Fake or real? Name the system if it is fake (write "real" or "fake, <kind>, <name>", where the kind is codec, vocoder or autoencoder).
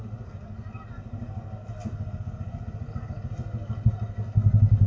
real